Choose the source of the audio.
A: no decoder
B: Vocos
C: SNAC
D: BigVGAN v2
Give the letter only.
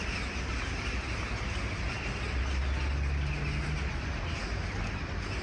A